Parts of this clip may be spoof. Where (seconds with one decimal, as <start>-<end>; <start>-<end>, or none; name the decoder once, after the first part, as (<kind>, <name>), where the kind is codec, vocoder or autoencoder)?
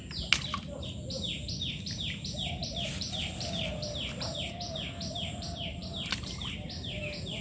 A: 2.6-7.0 (vocoder, BigVGAN v2)